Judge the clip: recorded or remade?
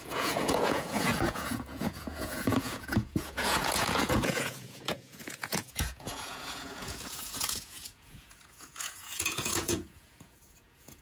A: remade